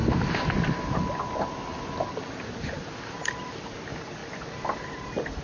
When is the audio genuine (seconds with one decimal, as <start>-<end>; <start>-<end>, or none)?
0.0-5.4